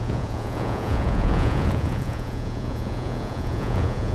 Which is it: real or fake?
fake